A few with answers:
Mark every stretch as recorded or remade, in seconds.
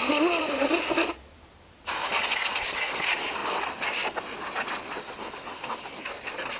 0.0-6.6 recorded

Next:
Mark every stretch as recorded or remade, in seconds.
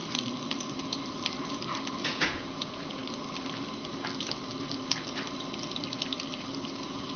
0.0-2.0 recorded; 2.0-3.0 remade; 3.0-6.7 recorded; 6.7-7.2 remade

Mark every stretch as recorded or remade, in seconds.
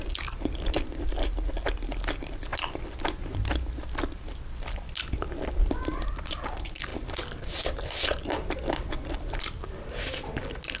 0.0-10.8 recorded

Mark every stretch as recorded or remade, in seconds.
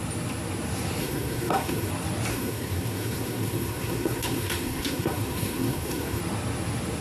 0.0-1.0 recorded; 1.0-1.9 remade; 1.9-2.3 recorded; 2.3-6.2 remade; 6.2-7.0 recorded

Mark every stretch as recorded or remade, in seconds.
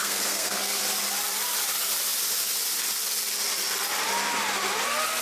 0.0-0.8 remade; 0.8-5.2 recorded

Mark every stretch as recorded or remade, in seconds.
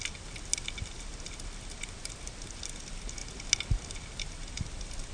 0.0-5.1 recorded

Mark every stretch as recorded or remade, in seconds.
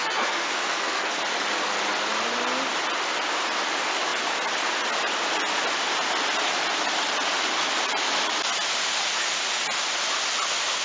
0.0-1.2 remade; 1.2-10.8 recorded